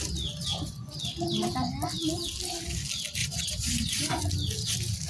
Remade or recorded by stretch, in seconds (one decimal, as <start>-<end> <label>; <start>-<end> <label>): 0.0-0.5 recorded; 0.5-1.0 remade; 1.0-3.2 recorded; 3.2-4.2 remade; 4.2-5.1 recorded